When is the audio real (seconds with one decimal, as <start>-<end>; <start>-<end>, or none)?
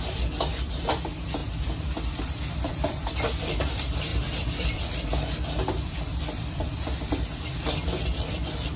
none